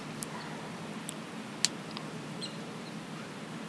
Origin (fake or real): real